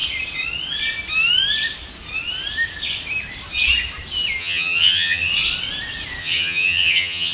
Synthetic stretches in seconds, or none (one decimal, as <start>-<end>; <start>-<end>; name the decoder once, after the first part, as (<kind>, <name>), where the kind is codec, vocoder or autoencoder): 4.4-5.3 (vocoder, HiFi-GAN); 6.2-7.3